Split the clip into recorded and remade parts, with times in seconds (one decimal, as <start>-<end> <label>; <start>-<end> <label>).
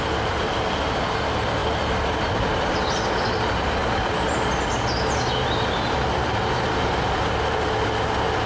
0.0-8.5 recorded